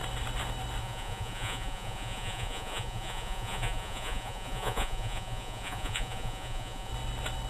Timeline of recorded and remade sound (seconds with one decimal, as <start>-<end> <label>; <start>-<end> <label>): 0.0-0.8 recorded; 0.8-6.9 remade; 6.9-7.5 recorded